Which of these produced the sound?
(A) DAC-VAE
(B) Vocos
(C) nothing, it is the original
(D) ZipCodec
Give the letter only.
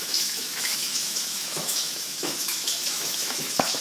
A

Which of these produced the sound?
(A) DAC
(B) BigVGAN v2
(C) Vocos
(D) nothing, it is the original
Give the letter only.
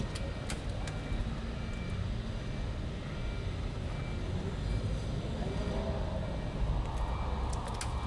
D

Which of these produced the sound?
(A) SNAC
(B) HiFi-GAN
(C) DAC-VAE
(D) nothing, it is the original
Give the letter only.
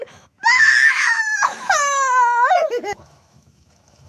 C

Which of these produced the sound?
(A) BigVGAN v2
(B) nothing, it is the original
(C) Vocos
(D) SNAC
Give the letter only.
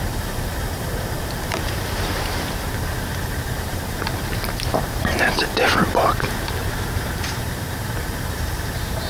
A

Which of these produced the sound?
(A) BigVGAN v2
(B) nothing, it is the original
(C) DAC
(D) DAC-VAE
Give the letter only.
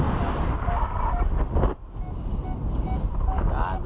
B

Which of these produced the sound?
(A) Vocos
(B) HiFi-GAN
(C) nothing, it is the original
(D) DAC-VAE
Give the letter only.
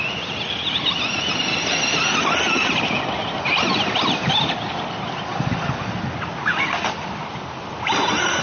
C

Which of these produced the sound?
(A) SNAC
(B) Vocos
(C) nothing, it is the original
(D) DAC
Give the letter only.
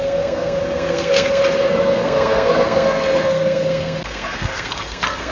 A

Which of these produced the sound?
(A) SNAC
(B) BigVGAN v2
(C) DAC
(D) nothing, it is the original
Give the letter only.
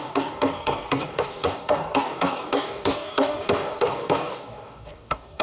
C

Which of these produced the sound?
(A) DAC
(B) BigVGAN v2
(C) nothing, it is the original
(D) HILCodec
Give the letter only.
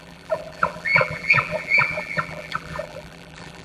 B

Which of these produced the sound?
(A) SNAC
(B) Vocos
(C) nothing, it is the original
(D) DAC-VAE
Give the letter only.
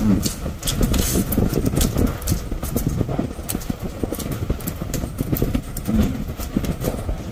C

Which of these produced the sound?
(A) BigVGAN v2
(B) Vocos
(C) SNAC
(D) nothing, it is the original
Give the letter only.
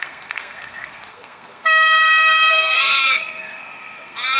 C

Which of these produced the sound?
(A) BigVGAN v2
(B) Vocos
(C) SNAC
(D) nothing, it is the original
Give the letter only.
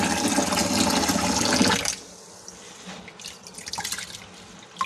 D